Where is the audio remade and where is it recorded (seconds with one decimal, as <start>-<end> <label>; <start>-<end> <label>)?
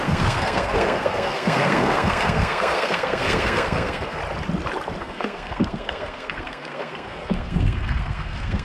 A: 0.0-4.2 remade; 4.2-5.0 recorded; 5.0-8.6 remade